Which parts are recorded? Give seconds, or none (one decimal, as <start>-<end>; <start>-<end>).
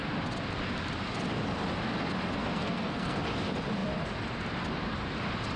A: 0.0-2.4; 3.2-5.6